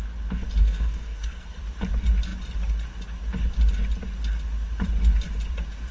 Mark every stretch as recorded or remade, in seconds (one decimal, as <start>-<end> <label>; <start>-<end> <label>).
0.0-0.6 recorded; 0.6-1.6 remade; 1.6-5.9 recorded